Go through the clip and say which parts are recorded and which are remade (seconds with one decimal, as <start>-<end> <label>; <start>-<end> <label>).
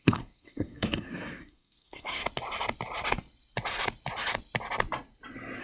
0.0-2.2 remade; 2.2-5.6 recorded